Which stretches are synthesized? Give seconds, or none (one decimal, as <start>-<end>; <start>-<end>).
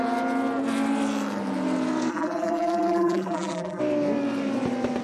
2.1-3.8